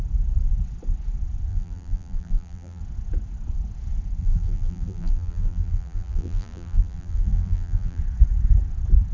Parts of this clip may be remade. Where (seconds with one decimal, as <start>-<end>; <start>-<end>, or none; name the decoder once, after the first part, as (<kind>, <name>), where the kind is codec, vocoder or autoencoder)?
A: 1.5-2.8 (vocoder, BigVGAN v2); 4.2-8.0